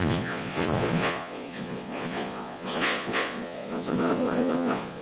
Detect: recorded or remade remade